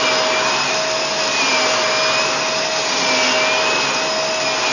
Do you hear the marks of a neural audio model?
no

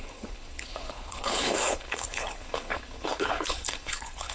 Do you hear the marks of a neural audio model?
yes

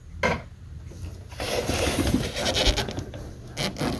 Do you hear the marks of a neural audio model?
no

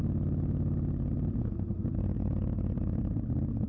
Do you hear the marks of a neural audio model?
no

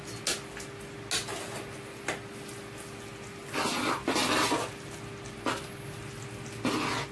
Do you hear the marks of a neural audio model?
no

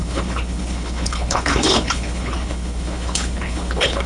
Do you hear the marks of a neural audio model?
yes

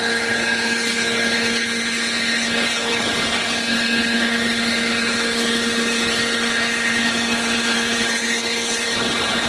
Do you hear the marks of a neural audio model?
yes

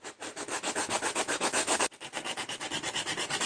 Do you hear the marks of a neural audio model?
no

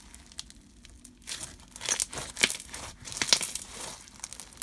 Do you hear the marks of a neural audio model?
no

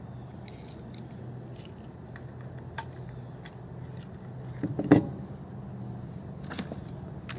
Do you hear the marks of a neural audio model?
no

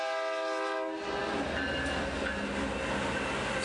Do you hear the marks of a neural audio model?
no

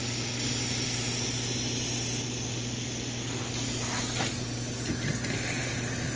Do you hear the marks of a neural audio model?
no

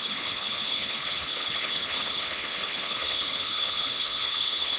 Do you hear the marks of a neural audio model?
yes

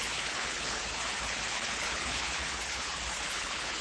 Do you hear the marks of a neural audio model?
yes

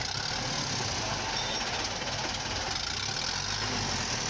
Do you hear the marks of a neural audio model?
no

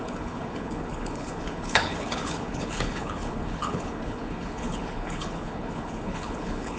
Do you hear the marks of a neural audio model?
yes